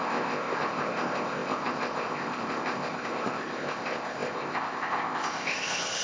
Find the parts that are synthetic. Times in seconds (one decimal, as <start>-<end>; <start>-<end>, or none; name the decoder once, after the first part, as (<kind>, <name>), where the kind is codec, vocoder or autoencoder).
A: 0.0-6.0 (codec, ZipCodec)